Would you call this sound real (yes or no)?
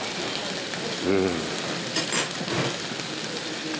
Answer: yes